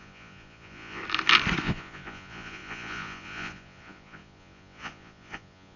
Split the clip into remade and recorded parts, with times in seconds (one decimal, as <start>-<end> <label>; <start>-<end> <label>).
0.0-1.0 remade; 1.0-1.6 recorded; 1.6-5.8 remade